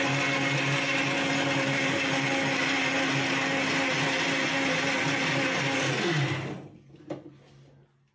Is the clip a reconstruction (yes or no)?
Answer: no